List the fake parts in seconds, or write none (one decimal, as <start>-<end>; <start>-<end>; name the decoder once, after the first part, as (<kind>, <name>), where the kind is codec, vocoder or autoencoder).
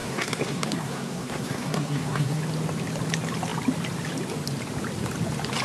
0.0-2.4 (codec, SNAC)